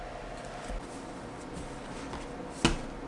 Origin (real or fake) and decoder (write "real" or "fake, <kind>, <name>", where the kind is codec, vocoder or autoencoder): real